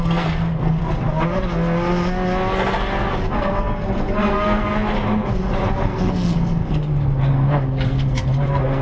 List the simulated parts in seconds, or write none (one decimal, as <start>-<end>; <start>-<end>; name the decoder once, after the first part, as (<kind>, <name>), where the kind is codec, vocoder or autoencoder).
0.0-0.8 (codec, SNAC); 3.3-4.7; 5.7-8.8